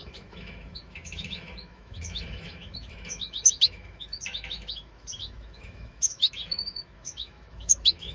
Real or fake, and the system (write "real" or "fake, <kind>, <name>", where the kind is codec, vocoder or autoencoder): fake, autoencoder, DAC-VAE